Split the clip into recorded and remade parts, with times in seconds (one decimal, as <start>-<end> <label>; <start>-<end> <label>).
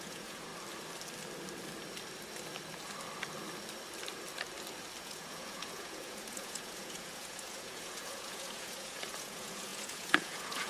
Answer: 0.0-0.5 remade; 0.5-5.0 recorded; 5.0-10.7 remade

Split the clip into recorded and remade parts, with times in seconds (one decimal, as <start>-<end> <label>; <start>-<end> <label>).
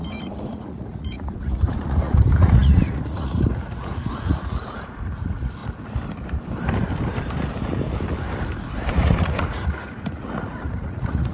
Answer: 0.0-5.6 remade; 5.6-8.9 recorded; 8.9-11.3 remade